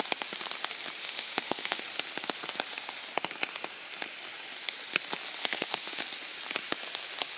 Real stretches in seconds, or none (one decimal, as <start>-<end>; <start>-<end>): 0.0-1.0; 1.8-5.4; 6.0-7.4